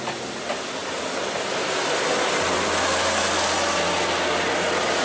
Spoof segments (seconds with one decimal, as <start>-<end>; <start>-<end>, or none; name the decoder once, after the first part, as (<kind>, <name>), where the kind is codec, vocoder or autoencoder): none